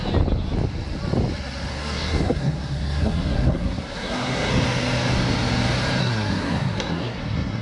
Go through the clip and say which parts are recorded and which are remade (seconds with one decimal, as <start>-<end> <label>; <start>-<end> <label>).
0.0-1.7 recorded; 1.7-4.5 remade; 4.5-6.0 recorded; 6.0-7.6 remade